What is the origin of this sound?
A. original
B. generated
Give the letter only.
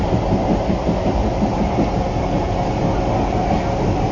A